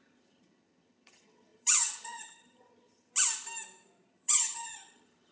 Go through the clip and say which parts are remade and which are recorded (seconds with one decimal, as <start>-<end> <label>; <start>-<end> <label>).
0.0-3.1 remade; 3.1-4.1 recorded; 4.1-5.3 remade